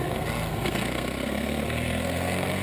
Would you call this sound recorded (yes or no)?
no